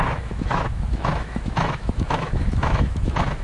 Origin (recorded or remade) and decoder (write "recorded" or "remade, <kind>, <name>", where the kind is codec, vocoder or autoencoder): remade, autoencoder, DAC-VAE